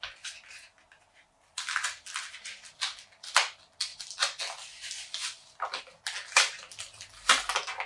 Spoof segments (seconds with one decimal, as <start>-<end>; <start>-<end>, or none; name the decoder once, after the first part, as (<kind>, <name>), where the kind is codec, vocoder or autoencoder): none